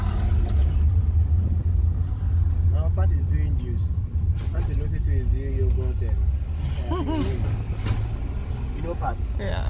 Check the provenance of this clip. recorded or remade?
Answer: recorded